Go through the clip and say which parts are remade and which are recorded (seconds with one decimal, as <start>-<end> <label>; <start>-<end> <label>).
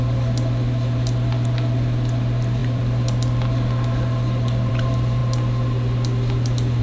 0.0-5.2 remade; 5.2-6.8 recorded